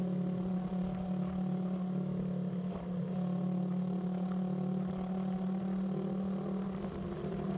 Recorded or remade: recorded